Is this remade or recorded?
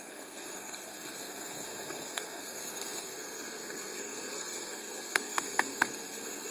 remade